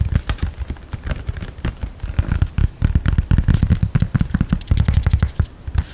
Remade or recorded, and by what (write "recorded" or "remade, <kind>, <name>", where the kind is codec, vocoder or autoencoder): recorded